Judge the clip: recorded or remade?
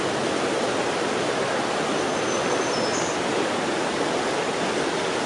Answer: recorded